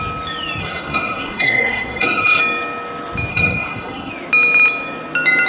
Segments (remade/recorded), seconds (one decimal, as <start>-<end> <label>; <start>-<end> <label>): 0.0-0.6 recorded; 0.6-2.4 remade; 2.4-3.3 recorded; 3.3-4.1 remade; 4.1-5.5 recorded